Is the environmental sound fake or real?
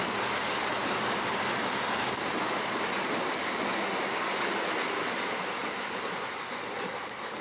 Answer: real